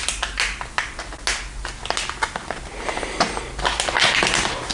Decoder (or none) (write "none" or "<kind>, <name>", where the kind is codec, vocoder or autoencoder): none